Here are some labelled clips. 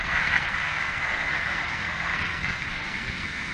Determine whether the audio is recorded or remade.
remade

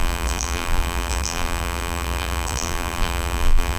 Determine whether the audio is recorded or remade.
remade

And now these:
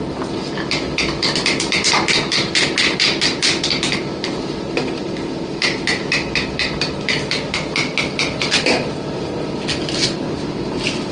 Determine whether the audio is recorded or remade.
recorded